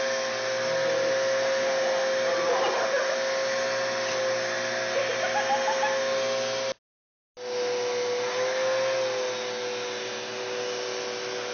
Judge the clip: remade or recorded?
recorded